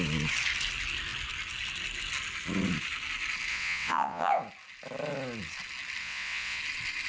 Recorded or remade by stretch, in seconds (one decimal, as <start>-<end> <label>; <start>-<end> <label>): 0.0-3.5 recorded; 3.5-4.4 remade; 4.4-6.0 recorded; 6.0-6.6 remade; 6.6-7.1 recorded